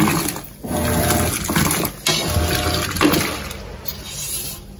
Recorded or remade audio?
recorded